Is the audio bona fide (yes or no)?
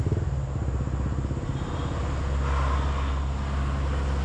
yes